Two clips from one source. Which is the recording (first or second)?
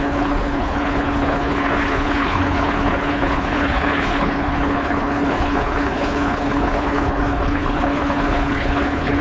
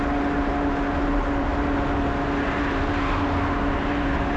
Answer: second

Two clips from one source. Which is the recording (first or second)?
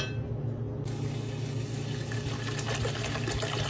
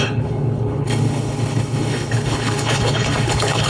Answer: first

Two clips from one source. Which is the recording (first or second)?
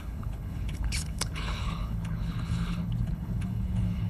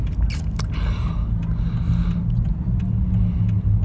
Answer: second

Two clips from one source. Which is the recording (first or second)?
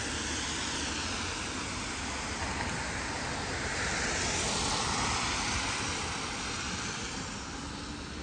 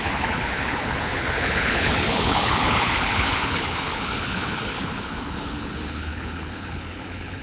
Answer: first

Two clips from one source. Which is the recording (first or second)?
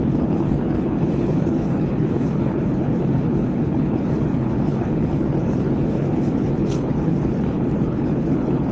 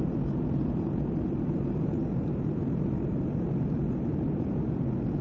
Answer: second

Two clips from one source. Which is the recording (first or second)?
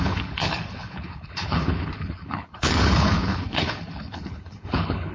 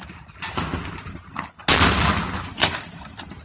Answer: second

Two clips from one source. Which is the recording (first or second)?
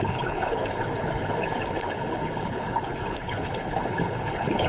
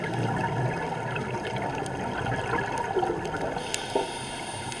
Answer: second